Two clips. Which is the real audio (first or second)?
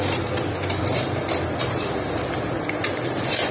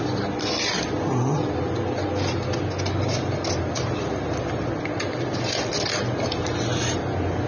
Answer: second